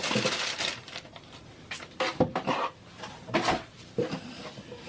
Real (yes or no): yes